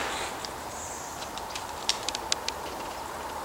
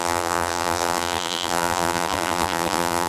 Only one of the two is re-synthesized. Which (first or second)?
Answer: second